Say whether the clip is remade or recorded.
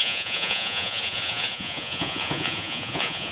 remade